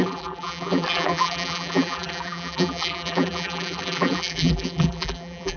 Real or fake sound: fake